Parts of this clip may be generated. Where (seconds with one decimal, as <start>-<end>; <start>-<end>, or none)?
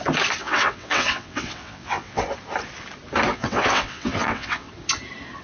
0.4-2.2; 3.3-4.7